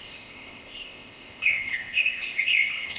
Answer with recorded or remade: remade